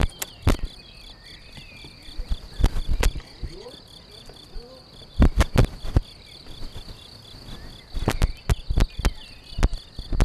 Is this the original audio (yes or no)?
yes